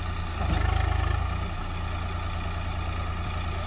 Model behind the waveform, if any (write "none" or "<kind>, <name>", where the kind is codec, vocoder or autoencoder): none